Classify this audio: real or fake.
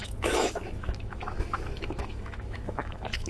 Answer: fake